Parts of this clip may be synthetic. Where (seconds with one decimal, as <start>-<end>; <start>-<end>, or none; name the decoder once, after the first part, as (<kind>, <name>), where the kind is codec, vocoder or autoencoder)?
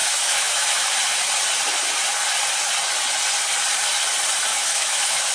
0.0-0.9 (autoencoder, DAC-VAE); 4.5-5.3